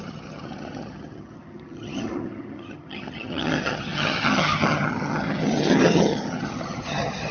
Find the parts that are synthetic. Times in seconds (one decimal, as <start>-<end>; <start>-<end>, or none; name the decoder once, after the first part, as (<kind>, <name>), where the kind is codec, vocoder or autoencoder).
0.0-7.3 (vocoder, HiFi-GAN)